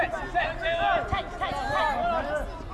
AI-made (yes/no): no